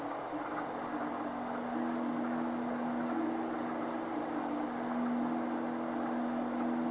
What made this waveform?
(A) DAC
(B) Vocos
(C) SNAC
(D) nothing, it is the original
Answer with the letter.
D